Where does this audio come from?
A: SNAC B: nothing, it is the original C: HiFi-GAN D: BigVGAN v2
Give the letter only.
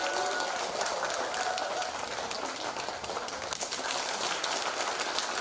B